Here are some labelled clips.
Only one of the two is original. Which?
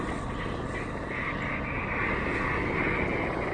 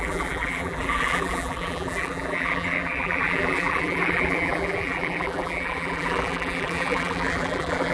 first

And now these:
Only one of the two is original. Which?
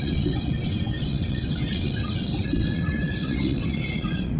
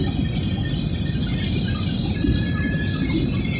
second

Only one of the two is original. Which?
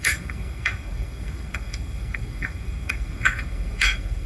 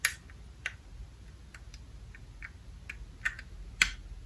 second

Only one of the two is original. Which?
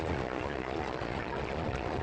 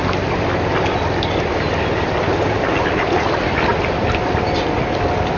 second